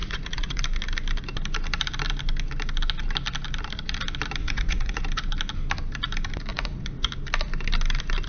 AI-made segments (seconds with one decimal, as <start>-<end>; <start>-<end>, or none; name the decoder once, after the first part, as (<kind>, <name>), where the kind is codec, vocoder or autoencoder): 0.0-0.6 (vocoder, Vocos); 4.4-5.0; 6.5-7.1